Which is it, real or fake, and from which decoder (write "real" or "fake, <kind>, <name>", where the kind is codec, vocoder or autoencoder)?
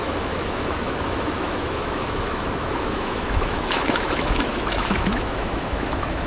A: fake, autoencoder, DAC-VAE